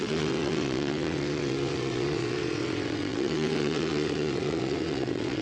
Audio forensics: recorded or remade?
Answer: remade